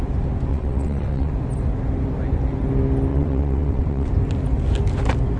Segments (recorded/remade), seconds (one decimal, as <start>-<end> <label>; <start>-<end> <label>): 0.0-0.5 recorded; 0.5-1.3 remade; 1.3-3.1 recorded; 3.1-4.1 remade; 4.1-5.4 recorded